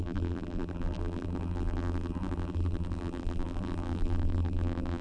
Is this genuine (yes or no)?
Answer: no